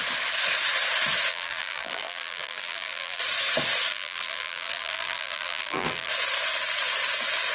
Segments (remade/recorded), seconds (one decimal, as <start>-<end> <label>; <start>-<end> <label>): 0.0-1.3 recorded; 1.3-3.2 remade; 3.2-3.9 recorded; 3.9-6.1 remade; 6.1-7.5 recorded